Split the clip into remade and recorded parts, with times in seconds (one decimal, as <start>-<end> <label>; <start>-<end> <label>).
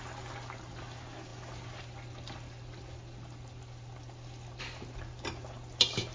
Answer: 0.0-6.1 recorded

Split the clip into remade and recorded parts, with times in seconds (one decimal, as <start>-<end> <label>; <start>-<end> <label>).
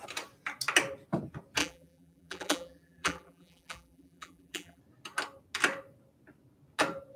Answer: 0.0-1.6 recorded; 1.6-4.8 remade; 4.8-7.2 recorded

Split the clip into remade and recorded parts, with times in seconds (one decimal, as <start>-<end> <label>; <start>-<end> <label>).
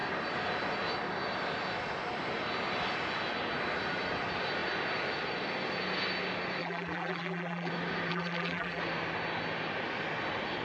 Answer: 0.0-6.6 recorded; 6.6-7.7 remade; 7.7-8.1 recorded; 8.1-8.8 remade; 8.8-10.6 recorded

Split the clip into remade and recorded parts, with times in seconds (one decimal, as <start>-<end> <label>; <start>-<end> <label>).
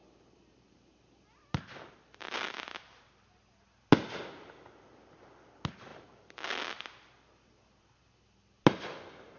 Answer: 0.0-9.4 recorded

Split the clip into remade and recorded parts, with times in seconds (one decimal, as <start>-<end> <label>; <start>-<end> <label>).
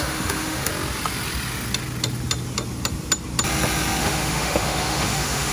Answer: 0.0-0.7 remade; 0.7-4.0 recorded; 4.0-5.5 remade